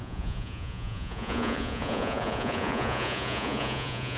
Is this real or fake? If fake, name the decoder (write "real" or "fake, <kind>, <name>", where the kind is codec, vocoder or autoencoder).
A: fake, vocoder, Vocos